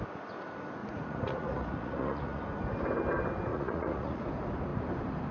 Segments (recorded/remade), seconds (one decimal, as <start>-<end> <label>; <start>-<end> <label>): 0.0-0.8 recorded; 0.8-2.4 remade; 2.4-3.5 recorded; 3.5-4.2 remade; 4.2-5.3 recorded